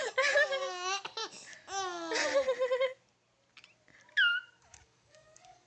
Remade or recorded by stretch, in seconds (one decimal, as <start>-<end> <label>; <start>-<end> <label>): 0.0-1.2 remade; 1.2-4.6 recorded; 4.6-5.7 remade